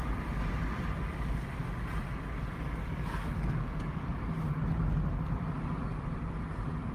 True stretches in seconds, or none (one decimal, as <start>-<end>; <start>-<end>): 0.0-2.8; 4.2-6.9